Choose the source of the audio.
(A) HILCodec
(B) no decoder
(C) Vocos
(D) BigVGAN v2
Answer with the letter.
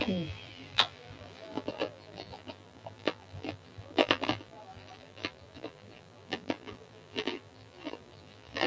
D